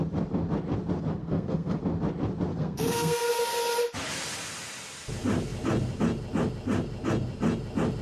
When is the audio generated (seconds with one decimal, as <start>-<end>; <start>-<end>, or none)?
1.2-1.8; 2.5-3.3